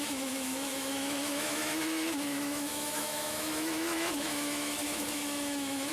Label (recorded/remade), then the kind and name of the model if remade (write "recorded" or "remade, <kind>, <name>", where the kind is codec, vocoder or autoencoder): remade, autoencoder, DAC-VAE